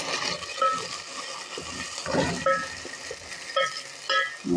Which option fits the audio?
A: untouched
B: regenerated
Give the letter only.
A